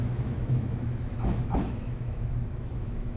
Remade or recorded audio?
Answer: remade